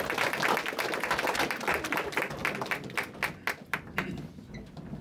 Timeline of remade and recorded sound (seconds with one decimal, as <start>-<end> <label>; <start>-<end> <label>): 0.0-5.0 recorded